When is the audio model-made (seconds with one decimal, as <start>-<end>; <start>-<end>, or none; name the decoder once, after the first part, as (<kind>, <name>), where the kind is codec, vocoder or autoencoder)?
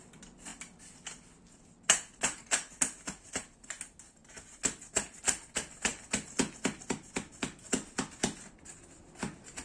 none